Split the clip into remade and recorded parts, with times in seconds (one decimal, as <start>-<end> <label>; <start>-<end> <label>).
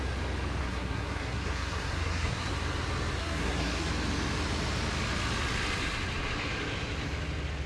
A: 0.0-0.6 recorded; 0.6-2.5 remade; 2.5-3.2 recorded; 3.2-3.9 remade; 3.9-7.7 recorded